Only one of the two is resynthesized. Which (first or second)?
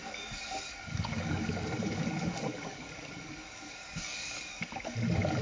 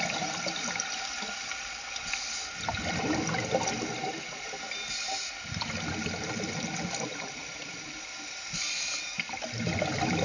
first